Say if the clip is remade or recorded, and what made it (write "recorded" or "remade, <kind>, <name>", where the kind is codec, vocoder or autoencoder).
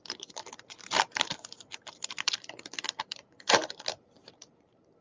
remade, vocoder, BigVGAN v2